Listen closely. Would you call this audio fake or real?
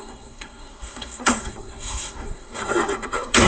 fake